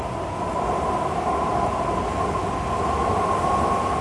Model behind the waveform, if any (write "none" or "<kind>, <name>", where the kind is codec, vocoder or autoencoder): none